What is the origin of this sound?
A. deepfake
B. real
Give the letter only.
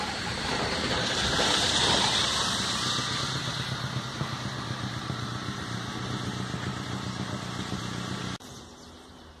A